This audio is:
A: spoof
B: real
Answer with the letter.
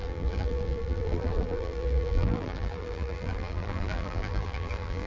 A